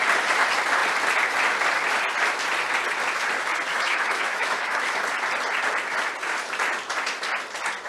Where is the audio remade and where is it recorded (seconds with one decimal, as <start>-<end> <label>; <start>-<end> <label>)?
0.0-3.7 recorded; 3.7-4.9 remade; 4.9-7.9 recorded